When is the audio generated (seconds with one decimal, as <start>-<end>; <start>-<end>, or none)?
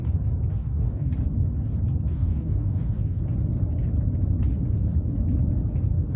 0.5-1.1; 2.1-3.2